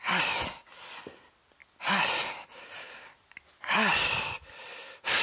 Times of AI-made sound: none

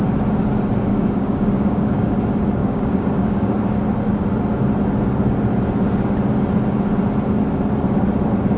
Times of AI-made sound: 0.9-2.1 (codec, DAC); 2.6-3.6

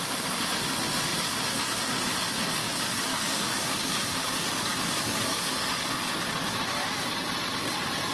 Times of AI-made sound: 2.6-5.9 (codec, DAC)

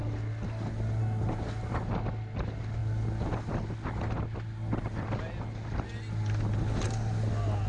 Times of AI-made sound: none

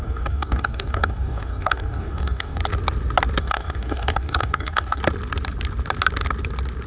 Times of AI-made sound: 0.0-2.6 (codec, DAC); 3.4-5.0

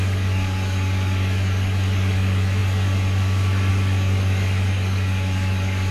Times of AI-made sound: 0.0-5.9 (codec, DAC)

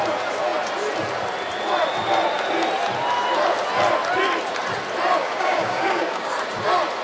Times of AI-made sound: 5.2-6.3 (codec, DAC)